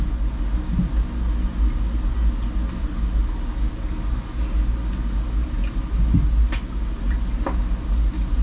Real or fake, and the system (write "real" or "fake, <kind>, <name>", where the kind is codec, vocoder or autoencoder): real